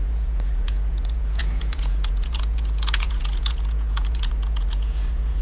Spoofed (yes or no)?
yes